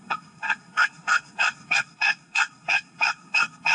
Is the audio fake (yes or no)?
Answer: yes